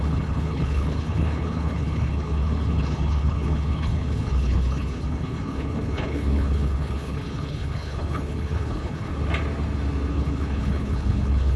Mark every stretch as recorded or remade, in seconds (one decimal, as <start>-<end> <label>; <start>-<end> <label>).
0.0-9.1 remade; 9.1-10.1 recorded; 10.1-11.6 remade